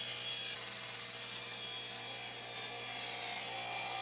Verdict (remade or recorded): recorded